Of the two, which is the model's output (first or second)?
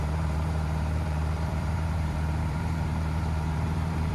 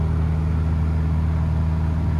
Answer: first